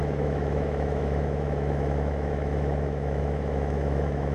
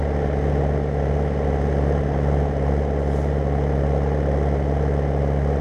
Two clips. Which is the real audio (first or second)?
second